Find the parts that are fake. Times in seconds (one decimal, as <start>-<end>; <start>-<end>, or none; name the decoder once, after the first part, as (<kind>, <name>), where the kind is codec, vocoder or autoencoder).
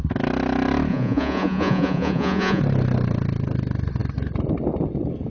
0.9-2.6 (vocoder, Vocos)